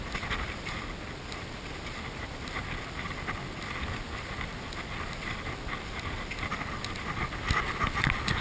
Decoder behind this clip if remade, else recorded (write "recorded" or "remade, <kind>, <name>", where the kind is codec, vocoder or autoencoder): recorded